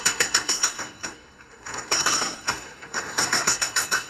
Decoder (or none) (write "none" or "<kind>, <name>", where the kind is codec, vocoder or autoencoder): codec, SNAC